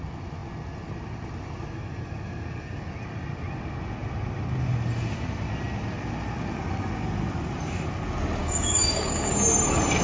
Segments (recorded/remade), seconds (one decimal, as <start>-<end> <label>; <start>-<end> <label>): 0.0-8.4 recorded; 8.4-9.3 remade; 9.3-10.0 recorded